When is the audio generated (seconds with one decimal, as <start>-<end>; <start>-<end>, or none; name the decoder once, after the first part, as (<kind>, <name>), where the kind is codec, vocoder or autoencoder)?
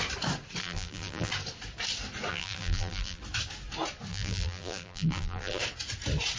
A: 0.6-1.3 (vocoder, BigVGAN v2); 2.3-3.2; 4.1-5.6